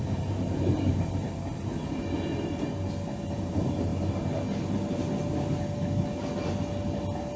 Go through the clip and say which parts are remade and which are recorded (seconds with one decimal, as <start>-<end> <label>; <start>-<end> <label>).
0.0-7.4 recorded